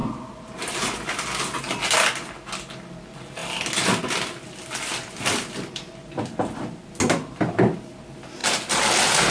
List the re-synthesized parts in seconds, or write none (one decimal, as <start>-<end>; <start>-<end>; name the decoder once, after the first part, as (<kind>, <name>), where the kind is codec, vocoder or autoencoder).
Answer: none